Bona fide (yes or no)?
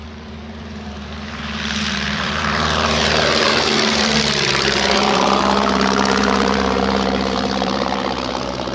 no